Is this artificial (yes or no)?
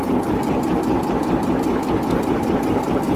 no